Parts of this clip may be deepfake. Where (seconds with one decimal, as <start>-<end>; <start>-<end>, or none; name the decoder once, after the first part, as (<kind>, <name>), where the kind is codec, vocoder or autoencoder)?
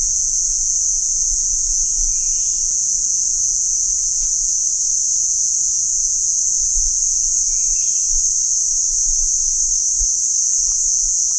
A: 0.0-4.6 (vocoder, Vocos); 5.2-7.6; 10.4-11.4